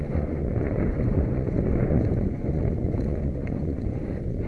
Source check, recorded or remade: remade